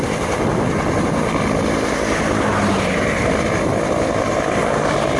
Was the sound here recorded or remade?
recorded